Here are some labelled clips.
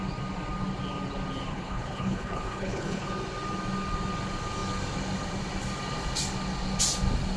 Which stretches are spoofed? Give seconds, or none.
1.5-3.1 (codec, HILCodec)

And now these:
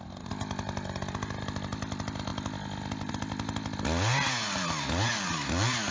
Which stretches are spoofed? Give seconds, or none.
none

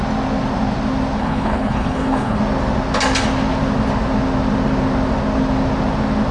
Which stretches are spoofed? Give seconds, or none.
1.2-2.4 (codec, HILCodec)

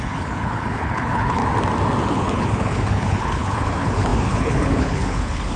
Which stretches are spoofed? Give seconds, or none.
0.0-1.4 (codec, HILCodec); 2.1-5.6

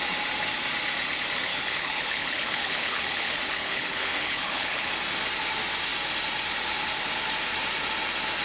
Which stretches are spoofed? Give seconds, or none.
1.5-4.9 (codec, HILCodec)

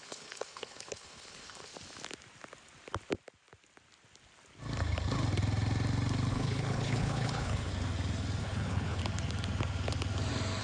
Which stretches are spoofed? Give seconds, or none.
0.0-1.7 (codec, HILCodec); 6.3-7.7; 8.4-9.0

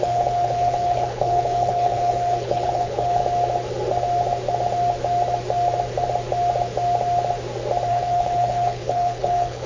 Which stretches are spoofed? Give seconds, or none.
0.0-3.2 (codec, HILCodec); 7.9-9.7